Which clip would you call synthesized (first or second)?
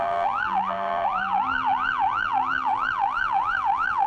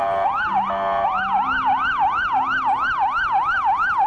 first